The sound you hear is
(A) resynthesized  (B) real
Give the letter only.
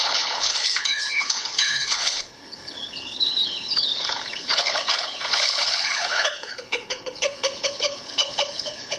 A